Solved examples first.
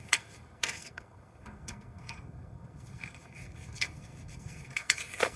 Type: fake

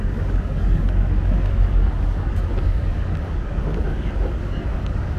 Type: fake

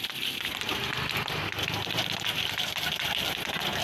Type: real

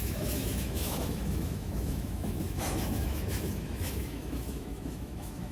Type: fake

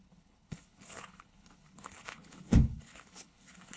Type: fake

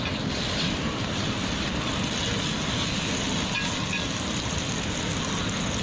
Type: real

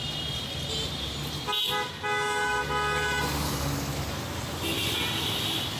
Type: real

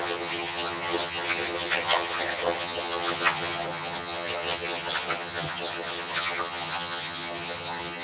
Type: fake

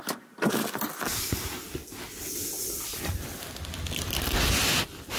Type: real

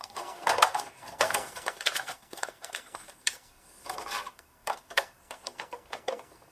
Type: fake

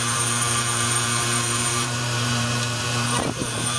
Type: fake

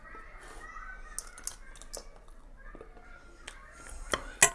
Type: real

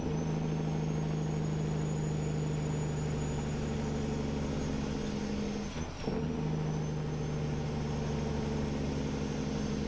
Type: real